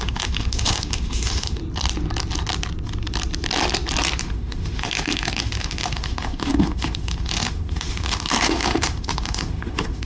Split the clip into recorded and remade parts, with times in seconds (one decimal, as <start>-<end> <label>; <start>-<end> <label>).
0.0-1.6 remade; 1.6-4.2 recorded; 4.2-10.1 remade